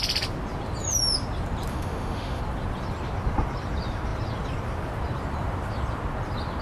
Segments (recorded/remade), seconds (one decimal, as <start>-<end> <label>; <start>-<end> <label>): 0.0-1.7 recorded; 1.7-2.4 remade; 2.4-6.6 recorded